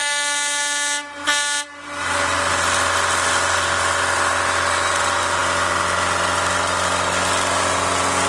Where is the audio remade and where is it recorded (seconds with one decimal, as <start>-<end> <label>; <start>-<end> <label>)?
0.0-8.3 recorded